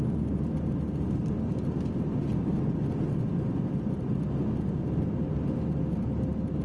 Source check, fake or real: real